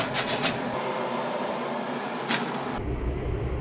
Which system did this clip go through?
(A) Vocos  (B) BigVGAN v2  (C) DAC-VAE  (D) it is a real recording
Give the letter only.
D